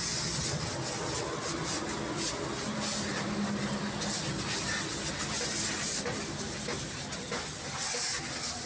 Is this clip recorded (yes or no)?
yes